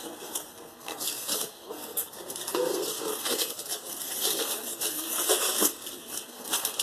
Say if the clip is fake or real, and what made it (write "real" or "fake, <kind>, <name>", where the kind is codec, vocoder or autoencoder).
fake, codec, SNAC